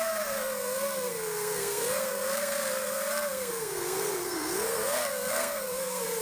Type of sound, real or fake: fake